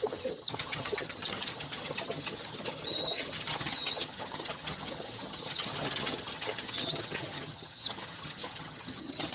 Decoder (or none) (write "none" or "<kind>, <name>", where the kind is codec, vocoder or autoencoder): vocoder, HiFi-GAN